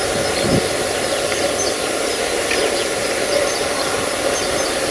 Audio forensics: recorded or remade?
recorded